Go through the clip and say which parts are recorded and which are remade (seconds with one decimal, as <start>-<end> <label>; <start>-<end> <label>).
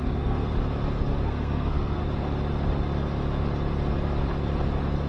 0.0-0.5 remade; 0.5-1.2 recorded; 1.2-2.0 remade; 2.0-5.1 recorded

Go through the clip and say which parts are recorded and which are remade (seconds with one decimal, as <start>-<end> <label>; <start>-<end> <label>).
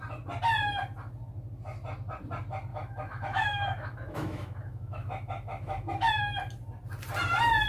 0.0-2.7 recorded; 2.7-6.2 remade; 6.2-7.7 recorded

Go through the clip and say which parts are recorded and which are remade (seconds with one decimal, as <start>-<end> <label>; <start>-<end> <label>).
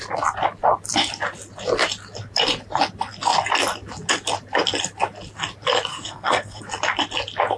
0.0-5.9 recorded; 5.9-6.6 remade; 6.6-7.6 recorded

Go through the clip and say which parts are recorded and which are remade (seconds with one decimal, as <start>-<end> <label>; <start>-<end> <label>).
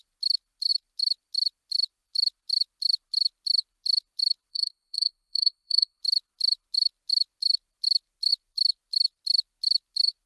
0.0-4.5 recorded; 4.5-6.0 remade; 6.0-10.3 recorded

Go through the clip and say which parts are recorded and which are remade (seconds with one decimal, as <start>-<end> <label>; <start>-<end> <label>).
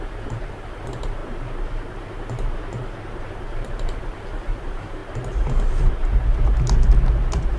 0.0-1.2 remade; 1.2-3.2 recorded; 3.2-5.0 remade; 5.0-7.6 recorded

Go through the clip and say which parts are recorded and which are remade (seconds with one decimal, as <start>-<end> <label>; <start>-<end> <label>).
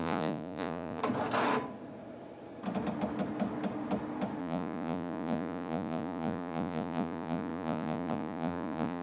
0.0-1.0 remade; 1.0-4.4 recorded; 4.4-9.0 remade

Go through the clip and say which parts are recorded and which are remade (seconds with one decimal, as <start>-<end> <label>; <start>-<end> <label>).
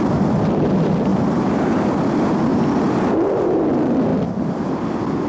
0.0-1.1 recorded; 1.1-1.6 remade; 1.6-2.5 recorded; 2.5-3.3 remade; 3.3-4.1 recorded; 4.1-4.7 remade; 4.7-5.3 recorded